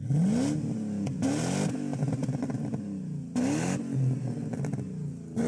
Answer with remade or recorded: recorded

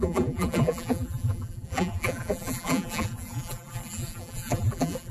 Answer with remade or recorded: remade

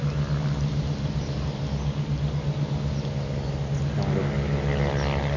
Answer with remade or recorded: recorded